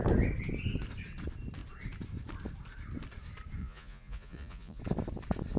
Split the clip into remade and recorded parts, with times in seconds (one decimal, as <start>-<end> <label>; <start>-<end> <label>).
0.0-3.6 recorded; 3.6-4.8 remade; 4.8-5.6 recorded